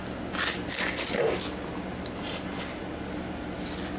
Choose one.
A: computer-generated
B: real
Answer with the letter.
B